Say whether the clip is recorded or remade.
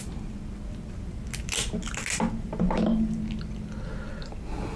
recorded